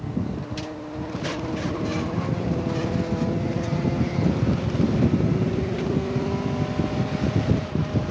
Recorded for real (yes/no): yes